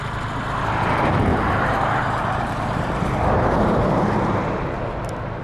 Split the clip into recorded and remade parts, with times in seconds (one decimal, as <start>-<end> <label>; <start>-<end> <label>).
0.0-1.3 recorded; 1.3-4.5 remade; 4.5-5.4 recorded